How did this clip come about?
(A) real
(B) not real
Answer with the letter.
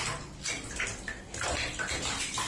A